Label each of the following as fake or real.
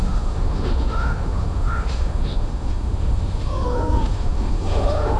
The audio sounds fake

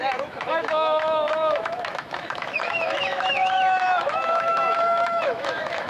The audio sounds fake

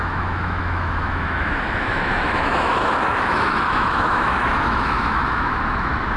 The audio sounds fake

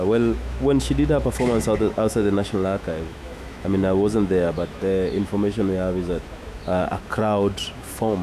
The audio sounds fake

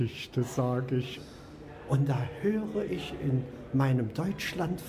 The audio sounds real